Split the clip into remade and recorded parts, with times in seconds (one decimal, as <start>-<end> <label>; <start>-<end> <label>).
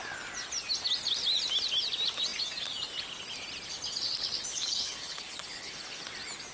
0.0-4.5 recorded; 4.5-6.0 remade; 6.0-6.5 recorded